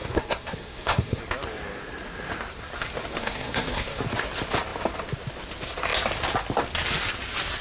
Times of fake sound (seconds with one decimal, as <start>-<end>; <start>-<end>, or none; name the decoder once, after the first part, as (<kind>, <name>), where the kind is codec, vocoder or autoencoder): 0.0-1.2 (codec, SNAC); 3.2-4.0